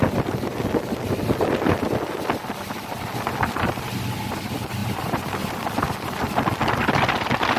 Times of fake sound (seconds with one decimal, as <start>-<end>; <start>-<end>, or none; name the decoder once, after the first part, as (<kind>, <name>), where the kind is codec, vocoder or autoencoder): none